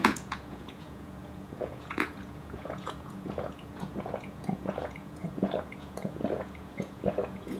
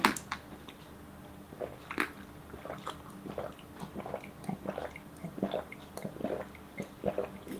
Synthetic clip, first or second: first